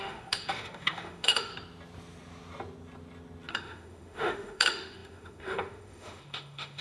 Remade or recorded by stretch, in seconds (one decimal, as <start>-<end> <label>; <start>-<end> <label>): 0.0-1.5 remade; 1.5-3.5 recorded; 3.5-6.8 remade